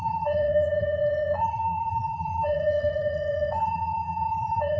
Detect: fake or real fake